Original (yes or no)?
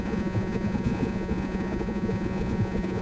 no